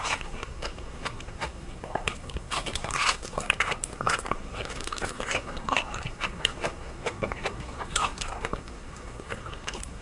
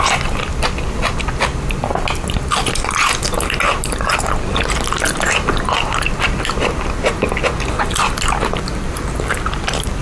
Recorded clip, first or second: second